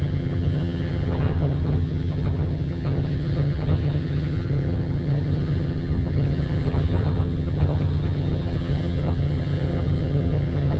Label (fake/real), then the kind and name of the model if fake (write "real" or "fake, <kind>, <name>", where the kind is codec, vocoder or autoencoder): fake, vocoder, HiFi-GAN